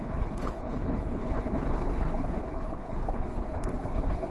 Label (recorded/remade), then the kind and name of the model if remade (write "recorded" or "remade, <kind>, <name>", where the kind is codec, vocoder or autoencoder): remade, codec, HILCodec